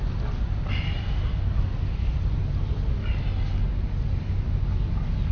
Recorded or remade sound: recorded